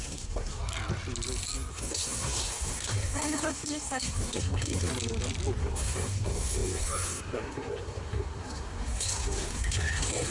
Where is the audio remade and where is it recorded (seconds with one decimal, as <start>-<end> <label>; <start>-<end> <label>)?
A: 0.0-0.6 remade; 0.6-1.7 recorded; 1.7-4.9 remade; 4.9-5.6 recorded; 5.6-10.3 remade